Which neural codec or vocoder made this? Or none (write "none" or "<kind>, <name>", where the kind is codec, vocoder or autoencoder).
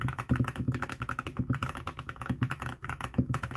autoencoder, DAC-VAE